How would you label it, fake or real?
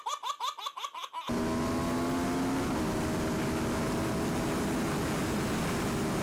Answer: real